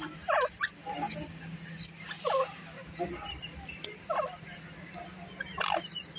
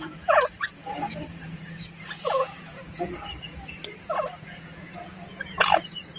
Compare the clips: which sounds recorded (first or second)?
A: first